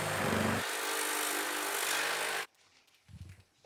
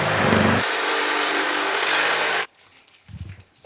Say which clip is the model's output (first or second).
second